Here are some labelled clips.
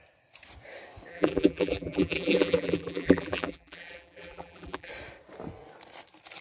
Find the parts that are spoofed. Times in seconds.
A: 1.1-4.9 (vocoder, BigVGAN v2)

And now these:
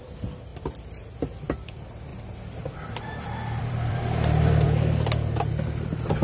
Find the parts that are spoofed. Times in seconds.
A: 0.0-2.1 (vocoder, BigVGAN v2); 3.6-5.5

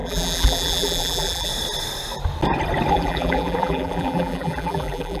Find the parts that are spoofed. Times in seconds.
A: 0.0-1.5 (vocoder, BigVGAN v2); 2.9-5.2

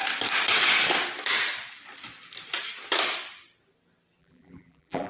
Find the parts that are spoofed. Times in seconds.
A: 4.2-5.1 (vocoder, BigVGAN v2)

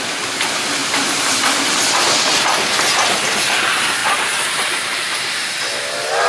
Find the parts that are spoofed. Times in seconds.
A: 0.8-1.3 (vocoder, BigVGAN v2); 4.0-5.3

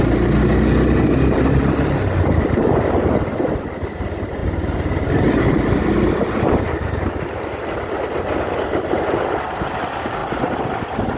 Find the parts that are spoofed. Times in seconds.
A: 4.4-7.4 (vocoder, BigVGAN v2); 10.2-11.2

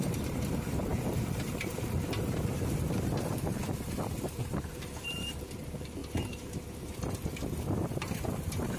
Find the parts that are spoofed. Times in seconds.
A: 0.0-6.0 (vocoder, BigVGAN v2); 7.9-8.8

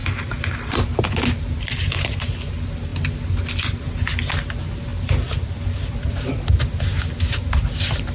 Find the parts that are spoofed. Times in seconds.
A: 0.0-1.1 (vocoder, BigVGAN v2); 4.9-6.4